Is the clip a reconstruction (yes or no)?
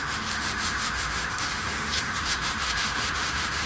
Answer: yes